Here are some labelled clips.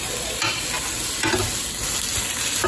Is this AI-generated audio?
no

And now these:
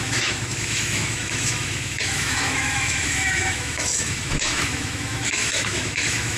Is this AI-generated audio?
yes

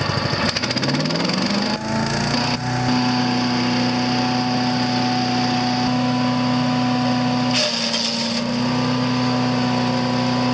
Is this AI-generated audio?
no